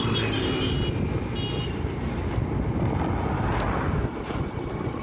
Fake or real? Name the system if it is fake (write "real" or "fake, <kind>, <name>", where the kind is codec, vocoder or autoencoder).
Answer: real